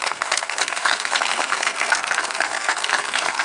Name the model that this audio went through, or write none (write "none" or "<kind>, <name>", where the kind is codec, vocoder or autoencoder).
codec, SNAC